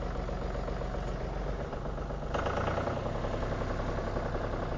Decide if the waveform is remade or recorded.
recorded